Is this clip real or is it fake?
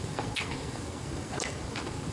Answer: fake